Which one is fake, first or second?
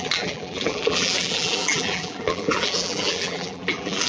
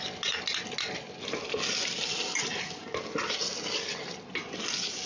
first